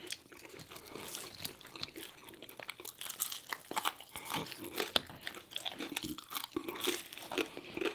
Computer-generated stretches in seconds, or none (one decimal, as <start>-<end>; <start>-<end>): none